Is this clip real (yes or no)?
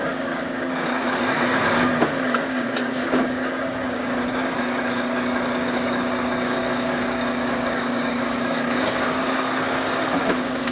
no